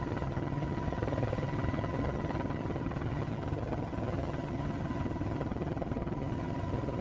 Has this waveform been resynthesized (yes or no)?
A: yes